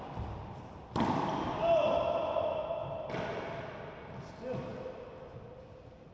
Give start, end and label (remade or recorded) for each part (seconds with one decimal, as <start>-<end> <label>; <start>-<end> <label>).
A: 0.0-6.1 recorded